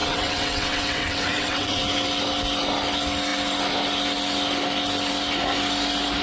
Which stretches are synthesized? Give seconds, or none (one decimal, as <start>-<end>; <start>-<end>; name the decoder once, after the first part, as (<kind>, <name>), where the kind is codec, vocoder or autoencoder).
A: 0.0-1.8 (vocoder, WaveNeXt)

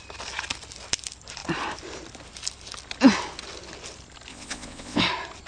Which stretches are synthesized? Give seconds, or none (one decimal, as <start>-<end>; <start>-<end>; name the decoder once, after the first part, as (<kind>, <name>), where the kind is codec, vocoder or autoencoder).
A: 4.3-5.0 (vocoder, WaveNeXt)